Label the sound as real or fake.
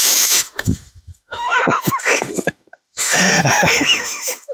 fake